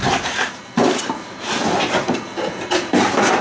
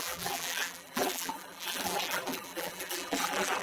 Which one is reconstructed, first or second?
second